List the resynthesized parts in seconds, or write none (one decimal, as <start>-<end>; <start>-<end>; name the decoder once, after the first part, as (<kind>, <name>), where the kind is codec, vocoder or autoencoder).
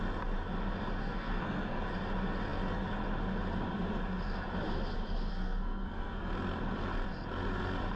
1.0-1.8 (codec, SNAC); 5.3-6.3